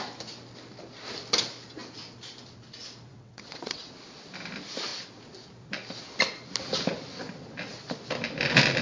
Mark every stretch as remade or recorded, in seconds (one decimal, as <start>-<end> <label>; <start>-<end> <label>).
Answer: 0.0-3.1 recorded; 3.1-3.9 remade; 3.9-8.8 recorded